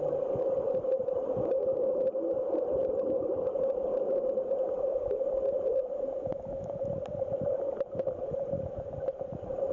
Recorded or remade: recorded